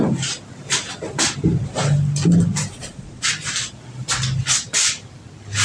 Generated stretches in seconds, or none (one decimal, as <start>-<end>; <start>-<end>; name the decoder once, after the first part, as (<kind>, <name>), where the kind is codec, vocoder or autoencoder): 2.7-3.3 (vocoder, Vocos)